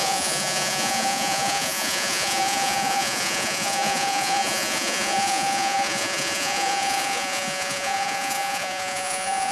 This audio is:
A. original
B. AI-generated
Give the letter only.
B